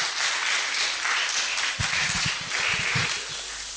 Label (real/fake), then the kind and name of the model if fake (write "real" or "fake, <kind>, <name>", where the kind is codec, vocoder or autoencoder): real